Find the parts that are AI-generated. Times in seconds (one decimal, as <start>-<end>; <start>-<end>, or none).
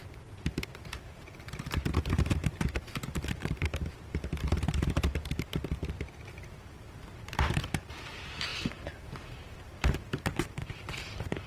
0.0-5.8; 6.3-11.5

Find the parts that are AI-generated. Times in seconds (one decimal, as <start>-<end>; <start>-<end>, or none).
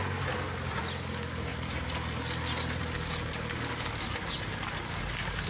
none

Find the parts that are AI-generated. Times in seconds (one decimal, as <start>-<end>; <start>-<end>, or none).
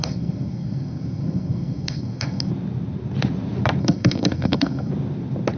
0.0-2.5; 3.8-4.9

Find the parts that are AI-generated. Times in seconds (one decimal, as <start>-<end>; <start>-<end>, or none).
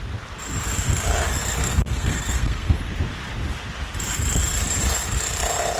1.7-2.8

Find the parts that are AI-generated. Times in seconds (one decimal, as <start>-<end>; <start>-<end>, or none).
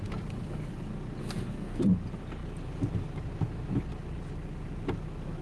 1.2-1.8